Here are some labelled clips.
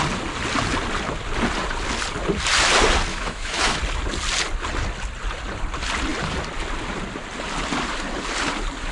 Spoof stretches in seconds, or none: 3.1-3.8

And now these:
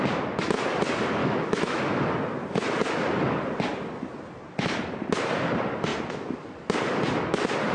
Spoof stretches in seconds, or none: 1.2-1.8

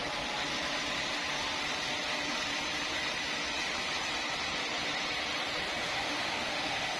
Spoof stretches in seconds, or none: 5.8-7.0